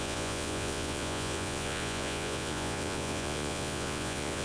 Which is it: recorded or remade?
remade